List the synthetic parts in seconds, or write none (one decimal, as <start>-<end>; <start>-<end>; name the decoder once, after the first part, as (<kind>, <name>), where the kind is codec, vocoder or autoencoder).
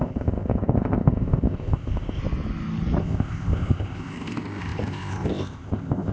0.0-2.2 (codec, ZipCodec); 3.0-6.1